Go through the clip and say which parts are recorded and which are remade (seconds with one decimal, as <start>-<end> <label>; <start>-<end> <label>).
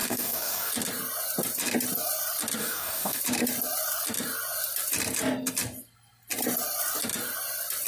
0.0-0.7 remade; 0.7-2.6 recorded; 2.6-3.2 remade; 3.2-7.9 recorded